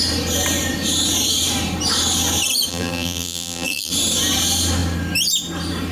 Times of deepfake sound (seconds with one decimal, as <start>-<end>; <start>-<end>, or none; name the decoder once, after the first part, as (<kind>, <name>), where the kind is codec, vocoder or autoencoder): 2.7-3.9 (vocoder, BigVGAN v2)